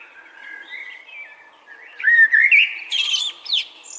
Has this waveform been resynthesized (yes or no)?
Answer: no